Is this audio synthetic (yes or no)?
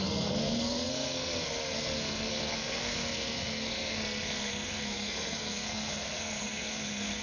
yes